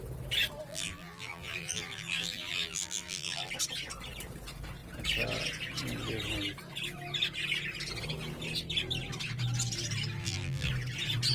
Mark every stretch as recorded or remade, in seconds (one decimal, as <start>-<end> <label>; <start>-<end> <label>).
0.0-0.7 recorded; 0.7-3.5 remade; 3.5-10.2 recorded; 10.2-10.7 remade; 10.7-11.3 recorded